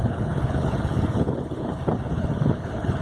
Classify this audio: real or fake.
fake